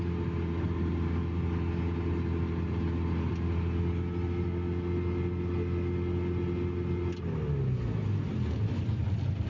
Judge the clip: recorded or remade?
recorded